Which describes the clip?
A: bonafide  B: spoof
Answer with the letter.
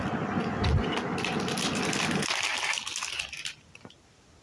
A